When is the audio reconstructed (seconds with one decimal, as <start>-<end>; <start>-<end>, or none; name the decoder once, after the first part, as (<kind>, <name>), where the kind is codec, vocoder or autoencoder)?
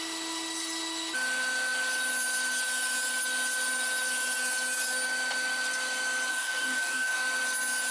6.3-7.2 (codec, DAC)